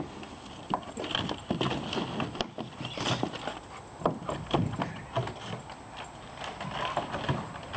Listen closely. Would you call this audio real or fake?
real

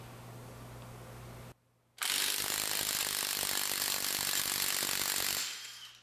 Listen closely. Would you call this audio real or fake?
real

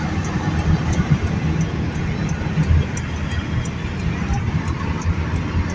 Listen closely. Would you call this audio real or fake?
real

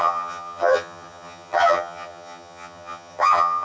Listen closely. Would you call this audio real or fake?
fake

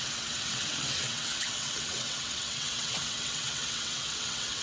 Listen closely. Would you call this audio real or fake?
fake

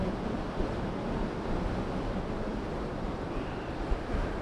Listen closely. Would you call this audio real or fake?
fake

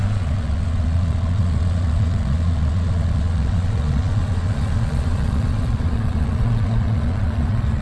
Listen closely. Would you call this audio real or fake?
fake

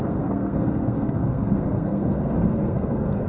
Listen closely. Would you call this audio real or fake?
fake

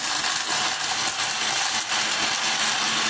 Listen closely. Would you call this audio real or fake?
real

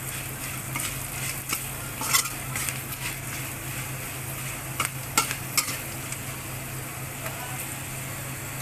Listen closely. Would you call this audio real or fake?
real